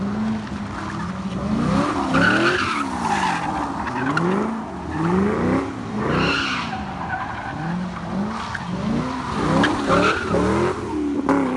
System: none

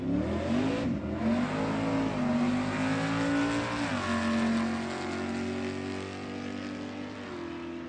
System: none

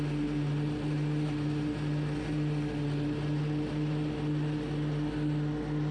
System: none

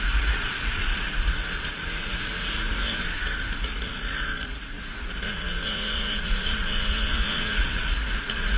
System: vocoder, Vocos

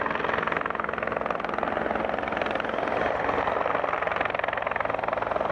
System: none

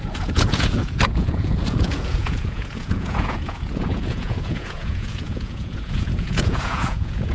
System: vocoder, Vocos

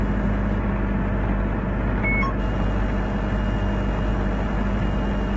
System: none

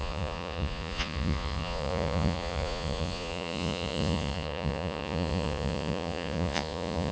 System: vocoder, Vocos